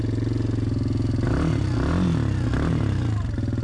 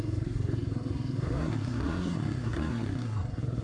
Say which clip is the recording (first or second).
first